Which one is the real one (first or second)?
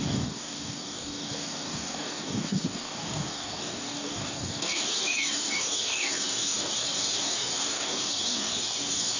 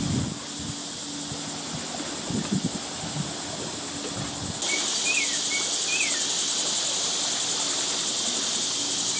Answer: second